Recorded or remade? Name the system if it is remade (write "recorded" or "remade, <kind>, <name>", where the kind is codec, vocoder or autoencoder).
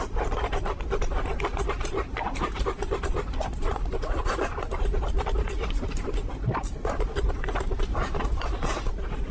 recorded